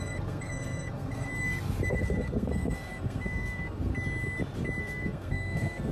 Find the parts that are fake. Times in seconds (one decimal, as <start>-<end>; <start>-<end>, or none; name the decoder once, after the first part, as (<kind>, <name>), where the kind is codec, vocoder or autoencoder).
0.0-1.3 (codec, SNAC); 1.9-3.9; 4.8-5.9